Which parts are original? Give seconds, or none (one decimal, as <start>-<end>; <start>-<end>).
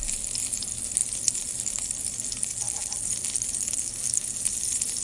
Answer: 0.0-5.0